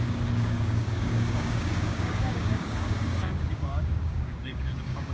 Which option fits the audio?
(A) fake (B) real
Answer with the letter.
A